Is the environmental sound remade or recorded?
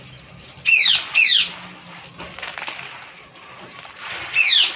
recorded